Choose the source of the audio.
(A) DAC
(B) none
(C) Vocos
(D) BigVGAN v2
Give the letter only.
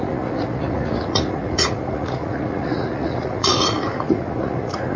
C